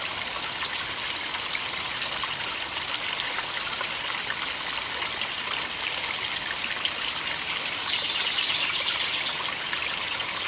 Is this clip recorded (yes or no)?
yes